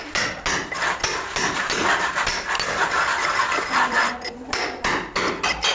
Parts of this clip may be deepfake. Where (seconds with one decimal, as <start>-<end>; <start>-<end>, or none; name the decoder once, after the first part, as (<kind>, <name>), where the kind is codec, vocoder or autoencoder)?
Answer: 1.6-2.2 (vocoder, BigVGAN v2)